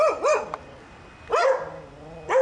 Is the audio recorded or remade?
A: recorded